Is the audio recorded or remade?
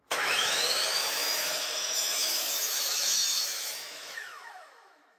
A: remade